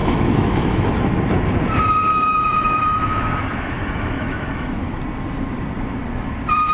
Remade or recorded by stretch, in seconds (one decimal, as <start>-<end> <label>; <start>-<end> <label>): 0.0-0.9 remade; 0.9-2.1 recorded; 2.1-5.0 remade; 5.0-6.7 recorded